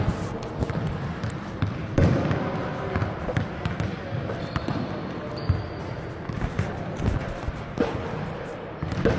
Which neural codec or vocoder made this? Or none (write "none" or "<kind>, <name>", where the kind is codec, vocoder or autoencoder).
none